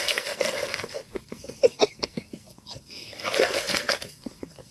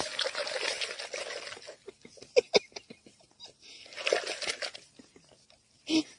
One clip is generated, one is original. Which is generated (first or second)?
first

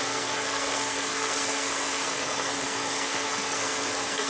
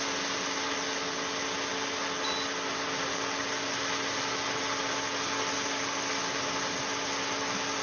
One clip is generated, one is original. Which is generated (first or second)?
first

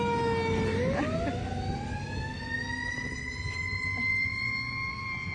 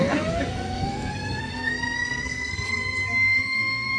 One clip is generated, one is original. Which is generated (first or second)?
second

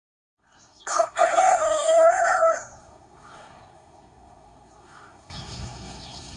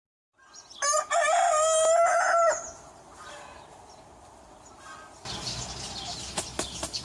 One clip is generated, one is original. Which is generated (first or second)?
first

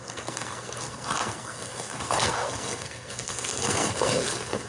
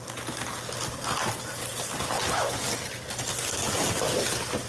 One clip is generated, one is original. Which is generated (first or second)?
first